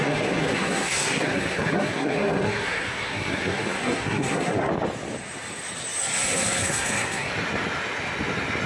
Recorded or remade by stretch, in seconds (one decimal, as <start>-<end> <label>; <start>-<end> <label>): 0.0-4.7 remade; 4.7-6.0 recorded; 6.0-7.3 remade; 7.3-8.7 recorded